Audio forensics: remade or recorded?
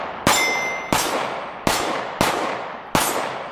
recorded